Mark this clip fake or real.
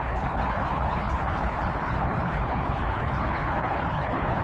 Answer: fake